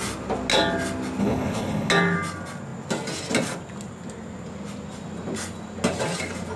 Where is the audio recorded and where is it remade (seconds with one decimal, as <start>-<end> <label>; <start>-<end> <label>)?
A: 0.0-1.2 recorded; 1.2-1.9 remade; 1.9-6.6 recorded